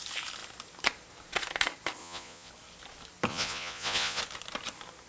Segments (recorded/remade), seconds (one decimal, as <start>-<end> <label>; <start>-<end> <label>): 0.0-2.0 recorded; 2.0-2.5 remade; 2.5-3.3 recorded; 3.3-4.2 remade; 4.2-5.1 recorded

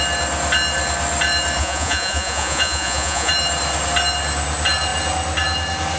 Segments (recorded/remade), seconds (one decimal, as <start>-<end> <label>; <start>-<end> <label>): 0.0-1.6 recorded; 1.6-3.3 remade; 3.3-6.0 recorded